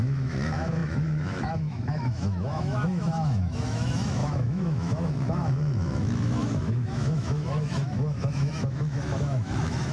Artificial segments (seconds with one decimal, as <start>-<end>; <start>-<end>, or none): 0.0-9.9